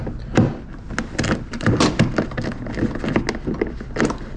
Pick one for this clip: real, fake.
real